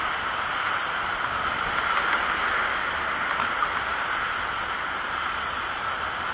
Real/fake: real